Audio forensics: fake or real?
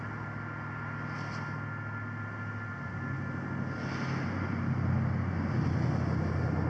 real